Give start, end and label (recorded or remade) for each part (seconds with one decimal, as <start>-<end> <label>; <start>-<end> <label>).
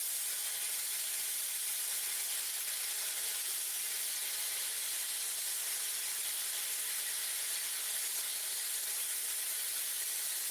0.0-10.5 recorded